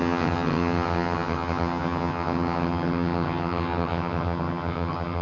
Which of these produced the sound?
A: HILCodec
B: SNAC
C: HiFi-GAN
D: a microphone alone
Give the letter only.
C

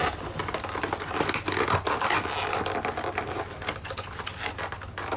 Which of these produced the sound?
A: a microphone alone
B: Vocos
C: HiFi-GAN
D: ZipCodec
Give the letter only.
A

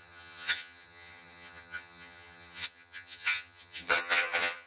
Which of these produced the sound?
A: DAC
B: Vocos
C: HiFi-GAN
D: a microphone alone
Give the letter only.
C